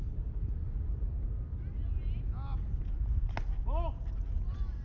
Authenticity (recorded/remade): recorded